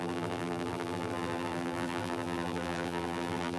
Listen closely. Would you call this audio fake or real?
fake